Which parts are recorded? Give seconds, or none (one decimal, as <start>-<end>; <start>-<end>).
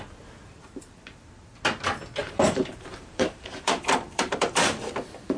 0.0-2.2; 4.9-5.4